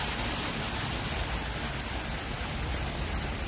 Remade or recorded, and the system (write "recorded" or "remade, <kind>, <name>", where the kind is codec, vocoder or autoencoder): recorded